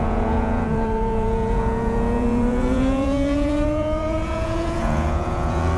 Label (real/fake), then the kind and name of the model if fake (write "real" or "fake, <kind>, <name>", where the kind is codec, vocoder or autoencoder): fake, vocoder, Vocos